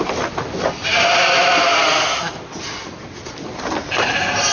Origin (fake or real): real